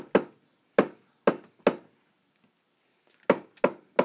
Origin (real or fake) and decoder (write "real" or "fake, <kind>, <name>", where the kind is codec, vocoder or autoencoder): real